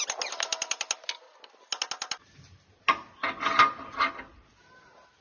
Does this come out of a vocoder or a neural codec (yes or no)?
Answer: no